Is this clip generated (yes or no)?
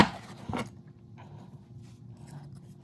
no